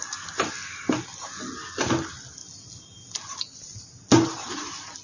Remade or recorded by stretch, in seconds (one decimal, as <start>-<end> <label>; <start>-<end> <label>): 0.0-5.0 recorded